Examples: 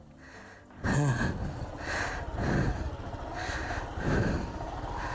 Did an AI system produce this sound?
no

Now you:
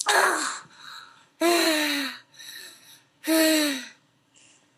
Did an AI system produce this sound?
yes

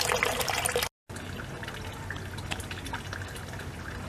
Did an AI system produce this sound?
no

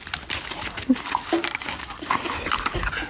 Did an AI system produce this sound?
no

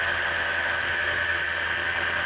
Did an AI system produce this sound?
no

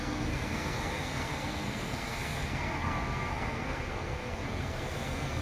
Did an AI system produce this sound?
yes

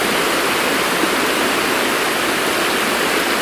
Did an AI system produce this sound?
no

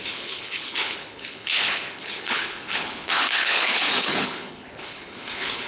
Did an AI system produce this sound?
yes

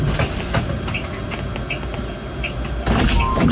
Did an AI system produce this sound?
no